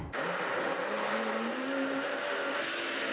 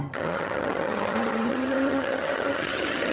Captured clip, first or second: first